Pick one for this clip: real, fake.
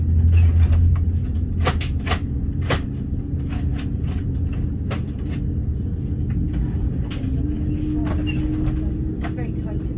real